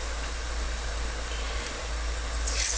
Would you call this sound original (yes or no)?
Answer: yes